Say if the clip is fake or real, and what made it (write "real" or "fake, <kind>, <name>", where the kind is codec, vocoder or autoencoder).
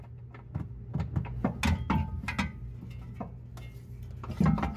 real